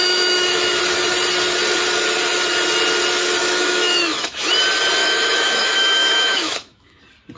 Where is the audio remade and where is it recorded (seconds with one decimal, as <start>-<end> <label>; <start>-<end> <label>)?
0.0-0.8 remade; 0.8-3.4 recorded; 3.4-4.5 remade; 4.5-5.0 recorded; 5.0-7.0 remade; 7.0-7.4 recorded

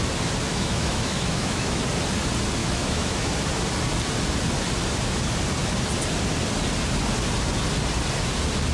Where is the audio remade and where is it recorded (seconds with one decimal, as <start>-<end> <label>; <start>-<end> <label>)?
0.0-0.5 recorded; 0.5-1.8 remade; 1.8-2.6 recorded; 2.6-3.3 remade; 3.3-8.7 recorded

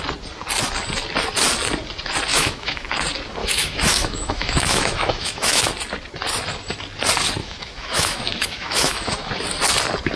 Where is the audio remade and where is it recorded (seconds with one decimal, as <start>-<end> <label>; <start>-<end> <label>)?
0.0-2.3 recorded; 2.3-2.9 remade; 2.9-3.4 recorded; 3.4-5.7 remade; 5.7-7.4 recorded; 7.4-9.3 remade; 9.3-10.2 recorded

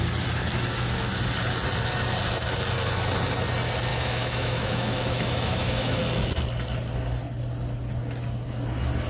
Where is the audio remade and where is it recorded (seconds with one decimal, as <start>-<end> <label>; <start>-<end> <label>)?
0.0-3.9 recorded; 3.9-6.0 remade; 6.0-9.1 recorded

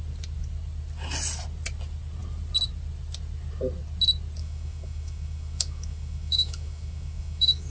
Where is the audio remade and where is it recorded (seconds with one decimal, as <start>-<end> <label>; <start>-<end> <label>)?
0.0-4.4 recorded; 4.4-7.7 remade